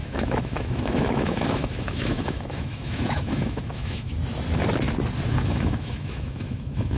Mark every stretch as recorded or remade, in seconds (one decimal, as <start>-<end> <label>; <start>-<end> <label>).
0.0-4.1 remade; 4.1-5.3 recorded; 5.3-7.0 remade

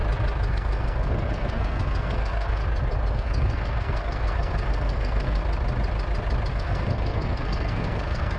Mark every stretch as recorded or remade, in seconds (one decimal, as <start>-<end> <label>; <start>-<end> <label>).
0.0-0.5 recorded; 0.5-2.6 remade; 2.6-3.1 recorded; 3.1-5.4 remade; 5.4-6.5 recorded; 6.5-8.4 remade